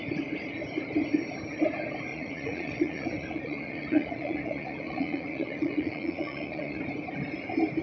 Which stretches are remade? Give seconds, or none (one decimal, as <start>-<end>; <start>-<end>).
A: 2.1-6.8